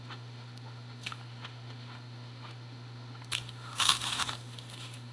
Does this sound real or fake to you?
fake